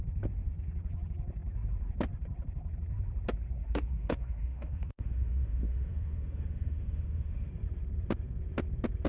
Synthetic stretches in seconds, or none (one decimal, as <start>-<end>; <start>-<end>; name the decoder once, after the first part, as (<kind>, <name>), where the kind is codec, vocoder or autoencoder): 3.6-7.5 (autoencoder, DAC-VAE)